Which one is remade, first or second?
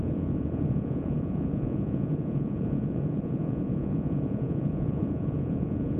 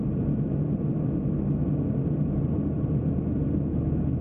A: first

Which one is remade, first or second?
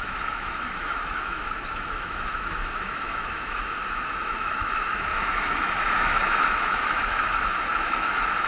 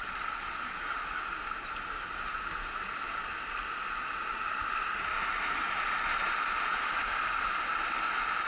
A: first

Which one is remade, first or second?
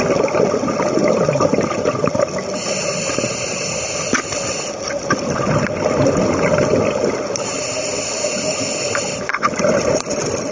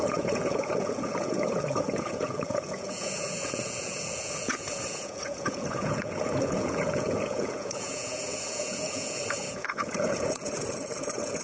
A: second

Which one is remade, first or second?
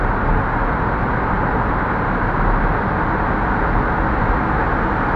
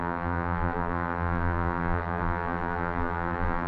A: second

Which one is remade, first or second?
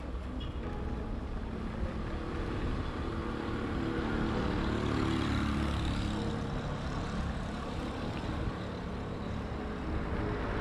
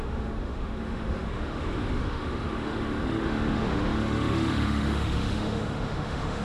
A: second